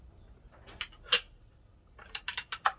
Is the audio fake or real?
real